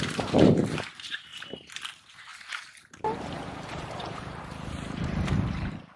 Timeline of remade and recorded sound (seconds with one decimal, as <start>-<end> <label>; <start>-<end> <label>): 0.0-1.3 remade; 1.3-1.9 recorded; 1.9-6.0 remade